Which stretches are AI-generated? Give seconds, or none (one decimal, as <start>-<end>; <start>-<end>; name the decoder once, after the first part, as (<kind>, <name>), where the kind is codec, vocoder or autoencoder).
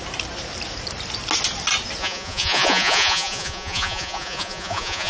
2.0-5.1 (vocoder, Vocos)